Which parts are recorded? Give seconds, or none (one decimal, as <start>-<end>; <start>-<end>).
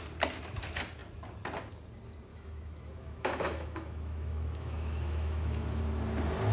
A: 0.0-2.3; 5.8-6.5